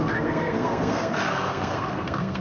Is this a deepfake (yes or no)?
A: yes